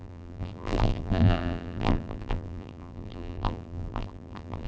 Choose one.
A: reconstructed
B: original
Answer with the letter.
A